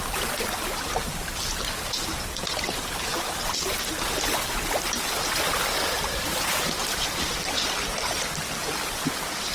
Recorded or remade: recorded